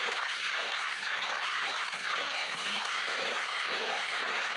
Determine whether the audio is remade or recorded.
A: remade